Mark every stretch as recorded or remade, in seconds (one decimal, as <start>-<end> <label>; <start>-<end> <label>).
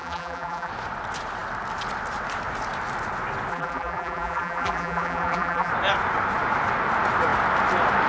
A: 0.0-0.7 remade; 0.7-3.5 recorded; 3.5-5.7 remade; 5.7-8.1 recorded